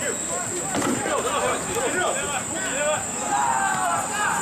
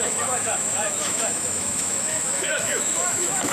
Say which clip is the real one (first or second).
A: first